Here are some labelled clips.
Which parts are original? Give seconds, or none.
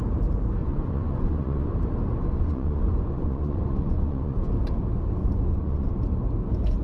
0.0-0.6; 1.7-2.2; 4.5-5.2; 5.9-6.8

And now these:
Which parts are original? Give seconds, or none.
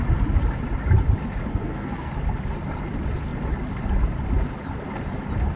0.0-1.5; 2.1-5.6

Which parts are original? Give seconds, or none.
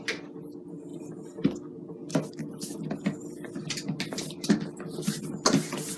0.0-6.0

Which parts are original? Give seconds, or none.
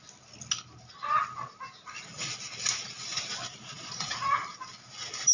0.0-3.5; 4.1-5.3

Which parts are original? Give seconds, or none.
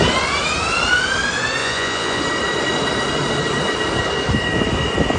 0.0-1.6; 2.2-5.2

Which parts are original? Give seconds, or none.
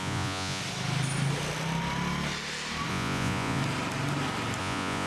0.6-2.9; 3.6-4.6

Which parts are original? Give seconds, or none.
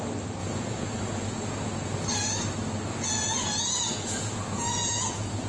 0.0-0.4; 1.9-2.9